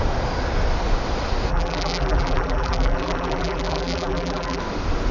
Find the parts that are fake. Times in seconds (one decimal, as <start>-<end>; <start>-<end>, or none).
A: 1.5-4.6